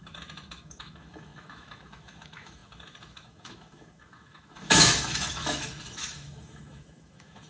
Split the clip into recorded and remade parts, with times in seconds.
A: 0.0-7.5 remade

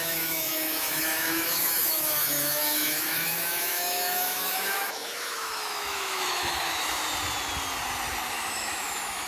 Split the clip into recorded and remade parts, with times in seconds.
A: 0.0-7.0 remade; 7.0-8.4 recorded; 8.4-9.3 remade

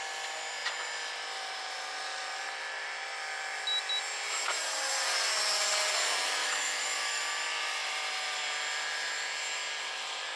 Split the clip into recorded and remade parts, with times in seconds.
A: 0.0-6.4 recorded; 6.4-7.2 remade; 7.2-10.4 recorded

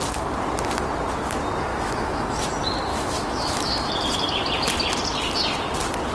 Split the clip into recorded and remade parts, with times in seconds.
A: 0.0-1.7 recorded; 1.7-2.5 remade; 2.5-2.9 recorded; 2.9-3.9 remade; 3.9-6.1 recorded

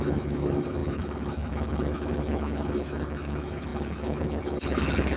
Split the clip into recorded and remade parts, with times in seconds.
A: 0.0-5.2 remade